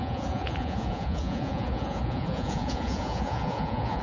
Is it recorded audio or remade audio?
remade